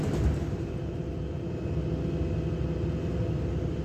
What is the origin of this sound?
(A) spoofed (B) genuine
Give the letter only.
B